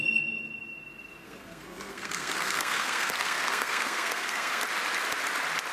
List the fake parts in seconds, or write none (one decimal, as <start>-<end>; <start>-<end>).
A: 1.2-4.6